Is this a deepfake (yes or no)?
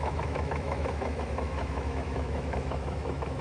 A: yes